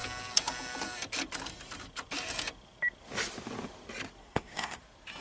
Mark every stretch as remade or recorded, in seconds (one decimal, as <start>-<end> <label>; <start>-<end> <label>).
0.0-4.2 recorded; 4.2-4.8 remade; 4.8-5.2 recorded